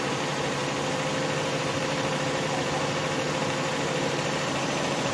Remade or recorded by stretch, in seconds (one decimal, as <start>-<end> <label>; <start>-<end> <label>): 0.0-0.6 remade; 0.6-1.6 recorded; 1.6-5.1 remade